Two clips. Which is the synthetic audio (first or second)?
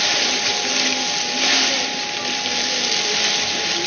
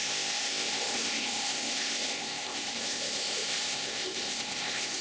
second